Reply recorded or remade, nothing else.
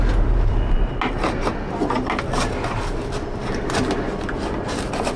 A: recorded